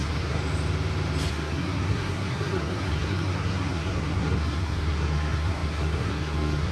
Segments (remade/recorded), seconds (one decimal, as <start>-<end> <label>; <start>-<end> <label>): 0.0-0.4 remade; 0.4-1.3 recorded; 1.3-6.7 remade